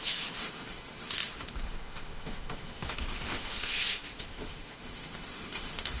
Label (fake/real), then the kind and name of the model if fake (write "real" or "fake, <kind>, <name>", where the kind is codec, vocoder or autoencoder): fake, autoencoder, DAC-VAE